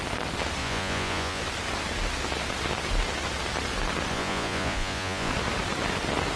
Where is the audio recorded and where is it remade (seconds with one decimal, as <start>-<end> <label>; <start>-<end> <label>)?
0.0-0.6 recorded; 0.6-1.4 remade; 1.4-4.1 recorded; 4.1-5.3 remade; 5.3-6.4 recorded